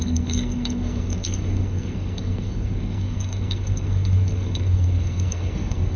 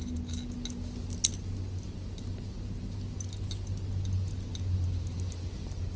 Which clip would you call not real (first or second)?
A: first